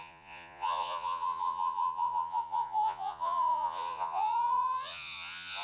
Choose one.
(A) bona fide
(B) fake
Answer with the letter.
B